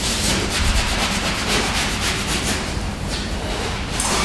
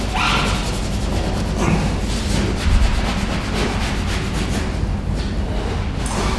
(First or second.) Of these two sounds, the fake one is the first